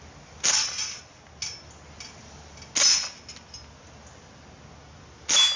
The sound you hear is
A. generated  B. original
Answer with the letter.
B